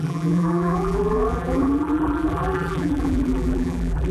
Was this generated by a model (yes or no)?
yes